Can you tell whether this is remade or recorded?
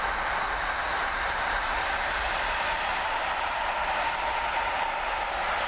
remade